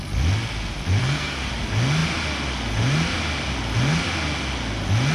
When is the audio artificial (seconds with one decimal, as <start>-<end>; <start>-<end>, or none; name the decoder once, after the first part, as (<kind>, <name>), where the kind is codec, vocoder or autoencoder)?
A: 1.0-1.5 (codec, SNAC)